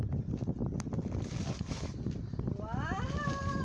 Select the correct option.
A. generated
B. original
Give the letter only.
B